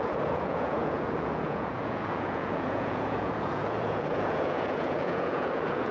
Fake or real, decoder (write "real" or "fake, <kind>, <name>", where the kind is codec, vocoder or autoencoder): fake, vocoder, Vocos